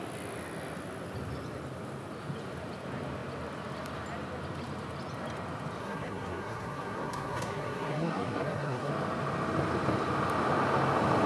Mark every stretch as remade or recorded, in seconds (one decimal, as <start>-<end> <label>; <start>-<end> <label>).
0.0-5.8 recorded; 5.8-8.9 remade; 8.9-11.3 recorded